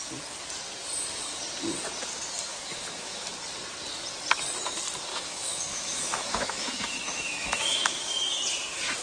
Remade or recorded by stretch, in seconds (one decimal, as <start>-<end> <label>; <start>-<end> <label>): 0.0-2.5 recorded; 2.5-3.3 remade; 3.3-5.1 recorded; 5.1-8.4 remade; 8.4-9.0 recorded